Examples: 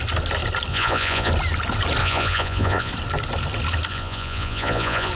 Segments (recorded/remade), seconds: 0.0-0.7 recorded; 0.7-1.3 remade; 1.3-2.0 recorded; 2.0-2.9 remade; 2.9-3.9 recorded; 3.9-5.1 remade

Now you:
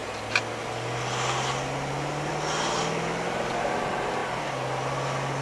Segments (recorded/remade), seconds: 0.0-5.4 recorded

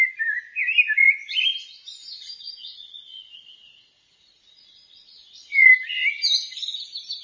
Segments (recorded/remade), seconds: 0.0-2.0 recorded; 2.0-5.7 remade; 5.7-7.2 recorded

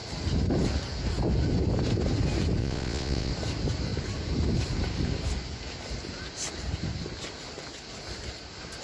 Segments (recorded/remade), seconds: 0.0-2.6 recorded; 2.6-3.3 remade; 3.3-8.8 recorded

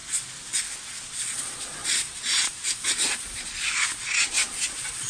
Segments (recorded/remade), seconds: 0.0-1.0 recorded; 1.0-5.1 remade

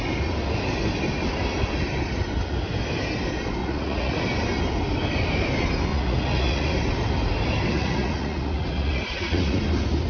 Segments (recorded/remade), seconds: 0.0-3.6 recorded; 3.6-4.2 remade; 4.2-5.9 recorded; 5.9-6.7 remade; 6.7-7.7 recorded; 7.7-9.6 remade; 9.6-10.1 recorded